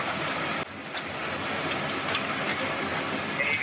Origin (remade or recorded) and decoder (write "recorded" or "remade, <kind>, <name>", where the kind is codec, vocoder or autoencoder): recorded